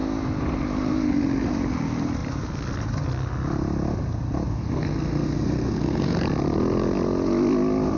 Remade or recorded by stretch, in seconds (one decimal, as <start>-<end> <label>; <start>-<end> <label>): 0.0-4.5 recorded; 4.5-6.2 remade; 6.2-8.0 recorded

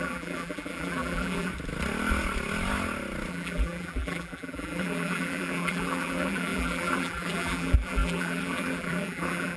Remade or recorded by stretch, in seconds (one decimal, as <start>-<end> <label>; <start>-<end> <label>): 0.0-1.5 remade; 1.5-3.3 recorded; 3.3-9.6 remade